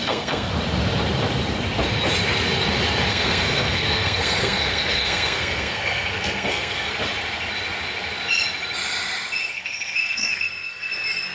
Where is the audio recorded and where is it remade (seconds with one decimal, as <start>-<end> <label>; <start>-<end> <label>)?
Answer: 0.0-0.5 remade; 0.5-3.1 recorded; 3.1-6.9 remade; 6.9-9.5 recorded; 9.5-10.9 remade; 10.9-11.3 recorded